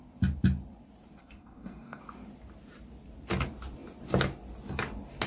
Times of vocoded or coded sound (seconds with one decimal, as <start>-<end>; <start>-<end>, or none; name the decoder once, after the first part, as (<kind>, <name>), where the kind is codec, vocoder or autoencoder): 1.2-2.0 (codec, SNAC)